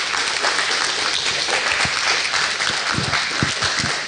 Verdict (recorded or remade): recorded